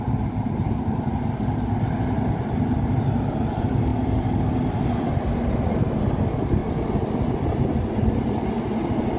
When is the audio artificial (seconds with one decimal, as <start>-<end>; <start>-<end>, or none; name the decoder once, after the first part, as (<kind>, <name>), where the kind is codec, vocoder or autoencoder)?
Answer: none